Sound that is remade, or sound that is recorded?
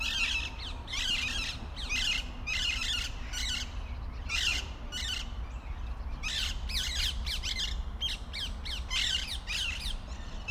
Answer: recorded